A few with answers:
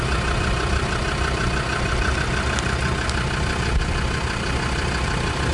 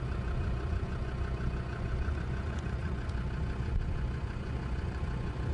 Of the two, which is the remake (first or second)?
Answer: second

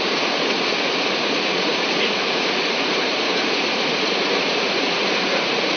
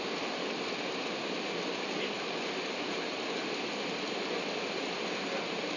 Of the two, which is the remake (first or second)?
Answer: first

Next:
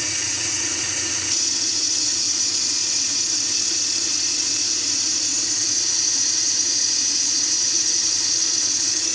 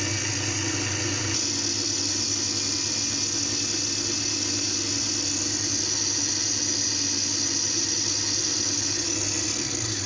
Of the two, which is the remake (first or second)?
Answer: first